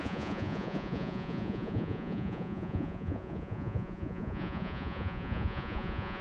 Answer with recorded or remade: remade